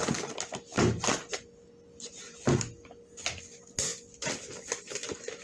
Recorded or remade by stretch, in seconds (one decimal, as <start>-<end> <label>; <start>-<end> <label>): 0.0-5.4 recorded